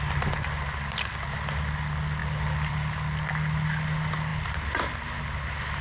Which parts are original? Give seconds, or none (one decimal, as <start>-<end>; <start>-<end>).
0.0-5.8